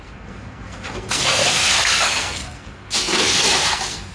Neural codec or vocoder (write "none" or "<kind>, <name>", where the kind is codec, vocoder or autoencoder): codec, SNAC